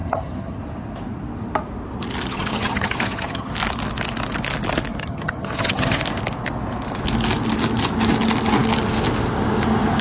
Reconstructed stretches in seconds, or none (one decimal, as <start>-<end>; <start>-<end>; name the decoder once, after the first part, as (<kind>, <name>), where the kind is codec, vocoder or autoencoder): 0.0-0.6 (vocoder, HiFi-GAN); 2.3-3.5; 5.0-6.0